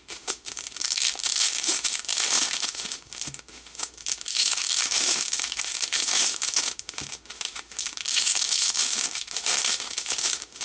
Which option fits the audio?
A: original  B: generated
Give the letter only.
B